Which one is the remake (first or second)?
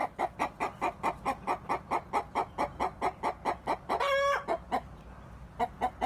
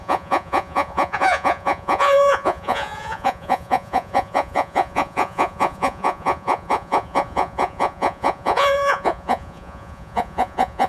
second